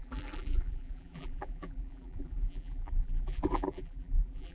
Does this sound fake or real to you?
fake